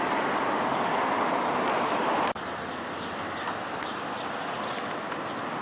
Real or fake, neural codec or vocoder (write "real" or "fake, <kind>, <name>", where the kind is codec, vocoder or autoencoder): real